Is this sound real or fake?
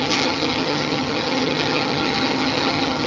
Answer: fake